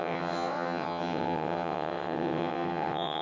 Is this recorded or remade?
remade